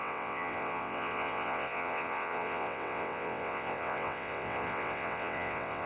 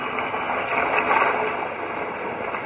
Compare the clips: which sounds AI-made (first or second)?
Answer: first